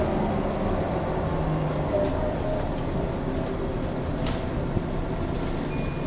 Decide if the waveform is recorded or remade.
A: recorded